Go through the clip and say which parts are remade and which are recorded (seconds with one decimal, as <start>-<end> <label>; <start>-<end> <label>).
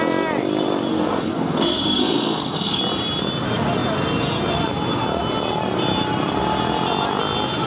0.0-0.9 recorded; 0.9-2.8 remade; 2.8-7.7 recorded